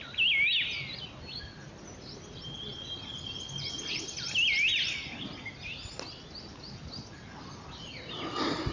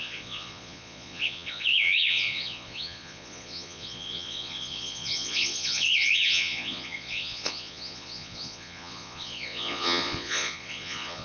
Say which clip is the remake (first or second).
second